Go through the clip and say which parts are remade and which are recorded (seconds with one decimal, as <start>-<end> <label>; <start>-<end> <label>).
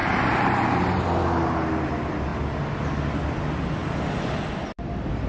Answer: 0.0-1.0 remade; 1.0-5.3 recorded